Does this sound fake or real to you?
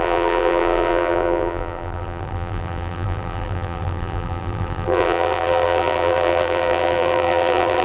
fake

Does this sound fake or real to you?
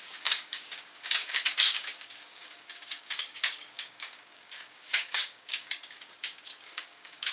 fake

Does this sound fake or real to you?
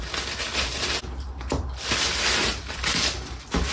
real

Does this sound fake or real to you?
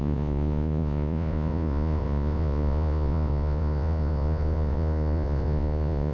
fake